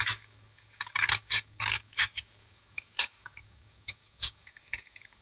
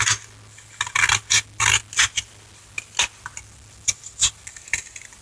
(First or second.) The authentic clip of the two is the second